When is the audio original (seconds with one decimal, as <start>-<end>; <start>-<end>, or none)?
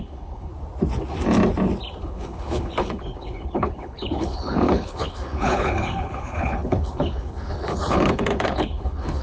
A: 0.5-2.0